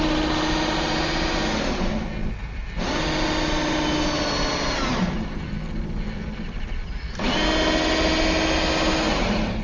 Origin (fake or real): real